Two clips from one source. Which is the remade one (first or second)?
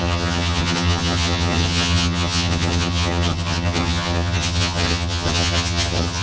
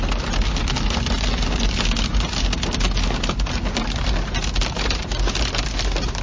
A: first